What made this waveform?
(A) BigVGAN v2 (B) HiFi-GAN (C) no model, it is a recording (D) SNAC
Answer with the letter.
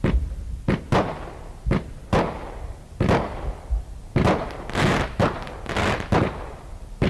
C